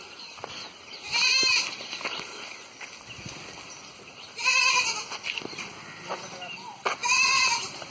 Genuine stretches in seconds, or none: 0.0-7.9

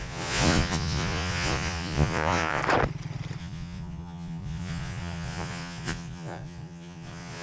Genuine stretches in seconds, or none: 2.6-3.4

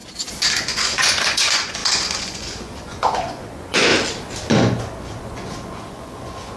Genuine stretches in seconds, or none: 0.0-0.5; 3.9-4.5